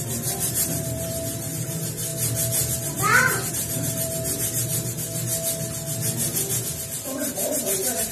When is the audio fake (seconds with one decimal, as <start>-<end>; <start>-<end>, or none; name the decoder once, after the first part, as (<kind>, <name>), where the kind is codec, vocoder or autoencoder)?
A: 0.0-2.1 (vocoder, BigVGAN v2); 3.5-4.7; 7.6-8.1